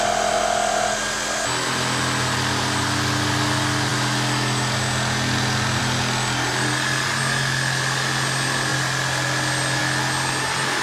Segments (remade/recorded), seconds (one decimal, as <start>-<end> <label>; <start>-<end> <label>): 0.0-10.8 recorded